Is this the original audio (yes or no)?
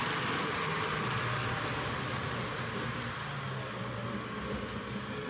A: yes